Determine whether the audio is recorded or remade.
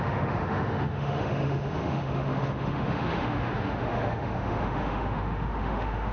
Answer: remade